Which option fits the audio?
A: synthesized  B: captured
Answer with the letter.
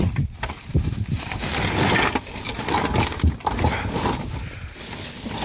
B